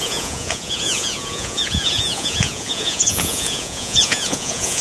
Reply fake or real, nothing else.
fake